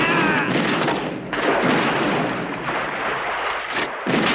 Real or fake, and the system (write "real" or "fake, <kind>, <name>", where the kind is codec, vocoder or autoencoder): real